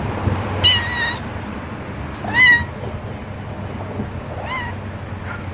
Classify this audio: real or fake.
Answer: real